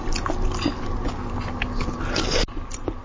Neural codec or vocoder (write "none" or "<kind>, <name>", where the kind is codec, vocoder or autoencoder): none